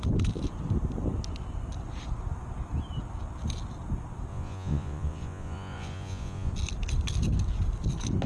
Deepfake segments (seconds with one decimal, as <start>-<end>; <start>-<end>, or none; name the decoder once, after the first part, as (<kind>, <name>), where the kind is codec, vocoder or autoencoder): 4.3-6.5 (vocoder, Vocos)